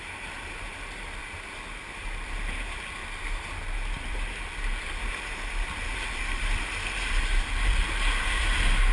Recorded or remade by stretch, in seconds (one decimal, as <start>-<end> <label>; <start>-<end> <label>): 0.0-8.9 recorded